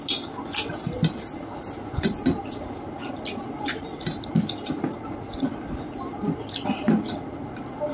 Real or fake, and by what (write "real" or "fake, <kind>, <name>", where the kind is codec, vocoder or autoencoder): real